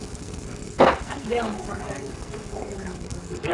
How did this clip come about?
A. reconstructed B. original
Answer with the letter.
A